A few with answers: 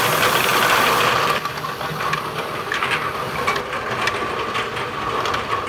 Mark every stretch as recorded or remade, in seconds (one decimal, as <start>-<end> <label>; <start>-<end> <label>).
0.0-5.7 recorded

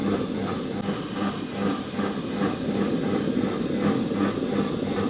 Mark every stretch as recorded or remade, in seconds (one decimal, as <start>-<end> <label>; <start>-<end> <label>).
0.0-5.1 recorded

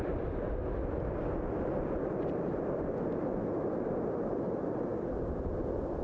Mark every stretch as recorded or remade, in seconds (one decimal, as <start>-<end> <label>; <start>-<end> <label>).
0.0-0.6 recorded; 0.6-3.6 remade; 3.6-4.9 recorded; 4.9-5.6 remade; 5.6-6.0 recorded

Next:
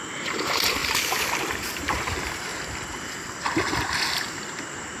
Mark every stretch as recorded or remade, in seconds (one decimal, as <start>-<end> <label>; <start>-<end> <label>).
0.0-0.8 remade; 0.8-1.5 recorded; 1.5-2.5 remade; 2.5-4.2 recorded; 4.2-5.0 remade

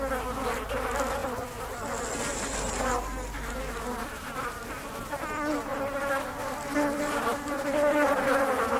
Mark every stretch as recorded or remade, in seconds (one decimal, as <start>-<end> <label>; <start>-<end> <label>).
0.0-4.0 recorded; 4.0-4.6 remade; 4.6-5.7 recorded; 5.7-8.2 remade; 8.2-8.8 recorded